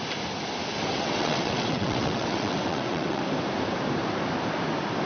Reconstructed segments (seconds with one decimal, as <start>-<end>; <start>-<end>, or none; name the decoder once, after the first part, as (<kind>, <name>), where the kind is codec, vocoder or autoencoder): 0.9-3.2 (vocoder, WaveNeXt)